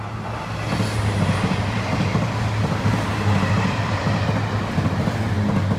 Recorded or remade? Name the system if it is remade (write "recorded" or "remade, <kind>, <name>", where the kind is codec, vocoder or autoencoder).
recorded